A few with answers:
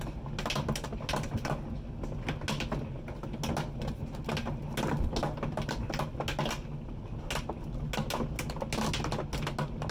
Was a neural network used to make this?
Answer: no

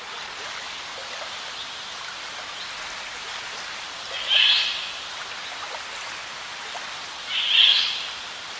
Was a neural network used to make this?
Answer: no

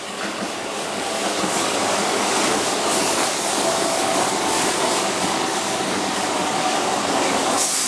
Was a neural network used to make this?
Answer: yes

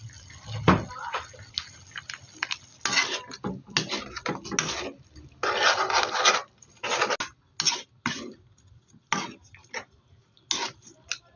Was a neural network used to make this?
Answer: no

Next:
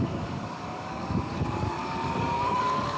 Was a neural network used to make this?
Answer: yes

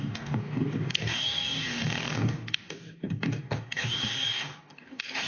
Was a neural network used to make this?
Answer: yes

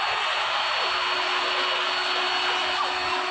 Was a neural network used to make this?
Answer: no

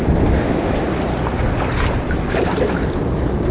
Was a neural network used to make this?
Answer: no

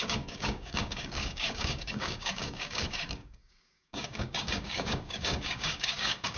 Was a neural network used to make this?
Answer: yes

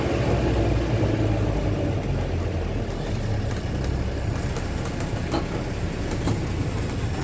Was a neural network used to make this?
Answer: no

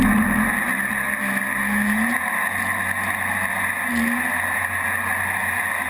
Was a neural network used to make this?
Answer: no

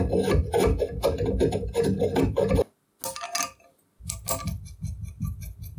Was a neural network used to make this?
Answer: no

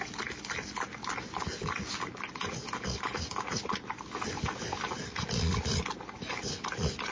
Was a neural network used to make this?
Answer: no